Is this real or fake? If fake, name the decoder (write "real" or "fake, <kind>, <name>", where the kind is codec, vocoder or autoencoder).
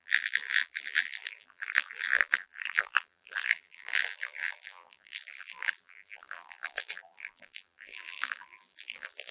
fake, vocoder, BigVGAN v2